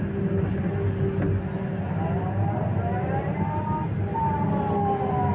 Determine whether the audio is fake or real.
real